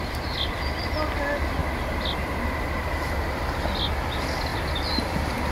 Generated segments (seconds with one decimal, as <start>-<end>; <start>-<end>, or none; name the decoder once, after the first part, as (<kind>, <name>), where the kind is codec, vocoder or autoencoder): 1.6-2.7 (vocoder, BigVGAN v2); 4.5-5.0